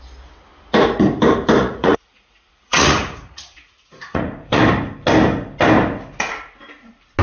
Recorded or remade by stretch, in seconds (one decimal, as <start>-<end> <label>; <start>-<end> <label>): 0.0-1.6 recorded; 1.6-4.6 remade; 4.6-7.2 recorded